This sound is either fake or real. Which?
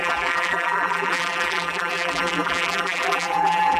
fake